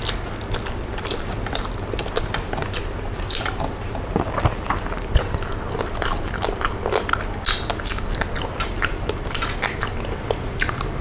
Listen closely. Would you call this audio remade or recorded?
recorded